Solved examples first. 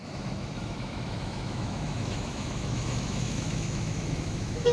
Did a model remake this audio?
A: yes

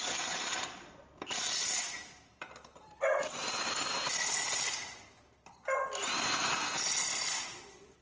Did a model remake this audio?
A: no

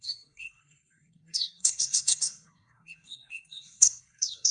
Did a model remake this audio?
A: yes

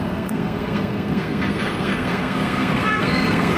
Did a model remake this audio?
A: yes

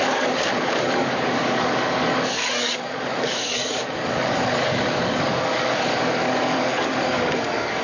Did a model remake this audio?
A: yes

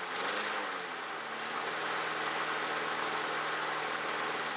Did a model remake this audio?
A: no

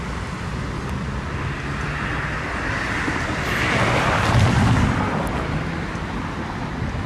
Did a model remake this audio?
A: no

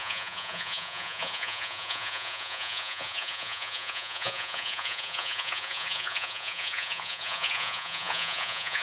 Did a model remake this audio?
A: yes